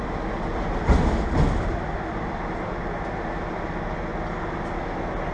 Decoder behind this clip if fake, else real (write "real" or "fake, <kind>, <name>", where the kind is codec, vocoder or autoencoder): real